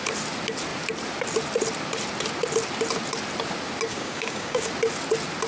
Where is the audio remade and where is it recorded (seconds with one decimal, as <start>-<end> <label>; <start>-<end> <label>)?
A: 0.0-3.9 recorded; 3.9-4.7 remade; 4.7-5.5 recorded